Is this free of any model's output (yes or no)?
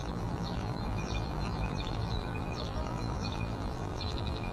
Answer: no